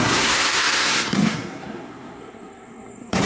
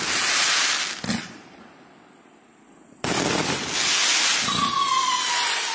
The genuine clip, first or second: second